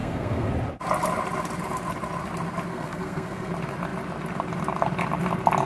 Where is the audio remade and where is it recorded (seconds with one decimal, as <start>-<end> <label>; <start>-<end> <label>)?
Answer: 0.0-0.5 remade; 0.5-2.7 recorded; 2.7-3.5 remade; 3.5-5.7 recorded